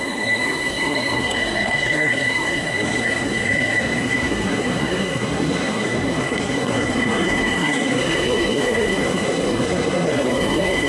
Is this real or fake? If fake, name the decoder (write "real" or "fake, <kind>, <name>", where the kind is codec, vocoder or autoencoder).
fake, codec, SNAC